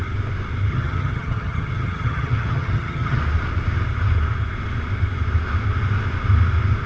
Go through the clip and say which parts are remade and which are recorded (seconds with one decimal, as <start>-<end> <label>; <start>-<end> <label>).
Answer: 0.0-0.7 recorded; 0.7-3.2 remade; 3.2-6.9 recorded